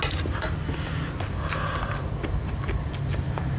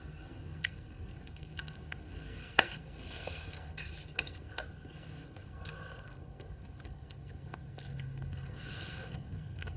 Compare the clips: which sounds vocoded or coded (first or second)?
second